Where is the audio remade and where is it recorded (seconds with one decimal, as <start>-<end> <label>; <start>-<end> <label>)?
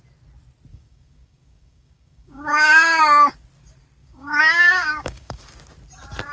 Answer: 0.0-0.7 recorded; 0.7-3.0 remade; 3.0-4.0 recorded; 4.0-5.4 remade; 5.4-6.3 recorded